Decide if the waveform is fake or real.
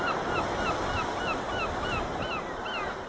real